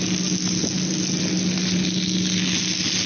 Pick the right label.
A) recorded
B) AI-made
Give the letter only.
A